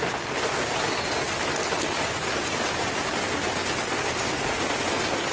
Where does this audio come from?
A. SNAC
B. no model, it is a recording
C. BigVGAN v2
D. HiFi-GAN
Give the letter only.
B